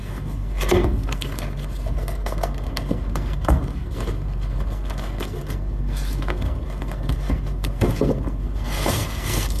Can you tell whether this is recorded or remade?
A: remade